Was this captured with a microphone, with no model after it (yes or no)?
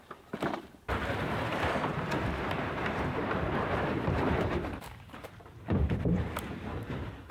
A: no